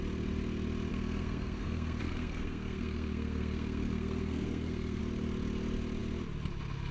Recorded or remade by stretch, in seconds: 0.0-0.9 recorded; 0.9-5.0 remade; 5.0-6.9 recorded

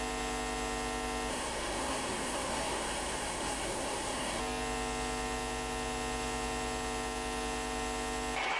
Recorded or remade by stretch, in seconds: 0.0-1.3 recorded; 1.3-4.4 remade; 4.4-8.6 recorded

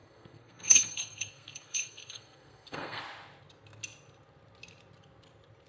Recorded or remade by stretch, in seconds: 0.0-3.0 remade; 3.0-5.7 recorded

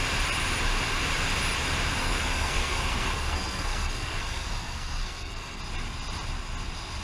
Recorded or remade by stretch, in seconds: 0.0-2.0 recorded; 2.0-5.6 remade; 5.6-7.0 recorded

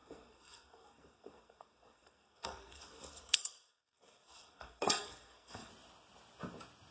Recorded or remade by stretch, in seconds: 0.0-5.7 remade; 5.7-6.9 recorded

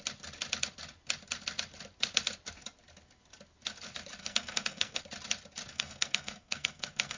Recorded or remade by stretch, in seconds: 0.0-4.2 recorded; 4.2-5.0 remade; 5.0-5.7 recorded; 5.7-7.2 remade

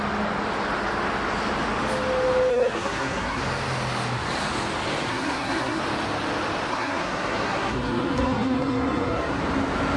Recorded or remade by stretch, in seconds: 0.0-2.5 recorded; 2.5-3.4 remade; 3.4-5.1 recorded; 5.1-5.8 remade; 5.8-6.7 recorded; 6.7-9.4 remade; 9.4-10.0 recorded

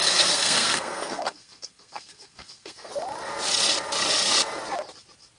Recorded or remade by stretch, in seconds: 0.0-2.9 remade; 2.9-5.4 recorded